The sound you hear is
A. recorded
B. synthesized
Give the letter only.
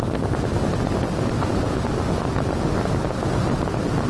A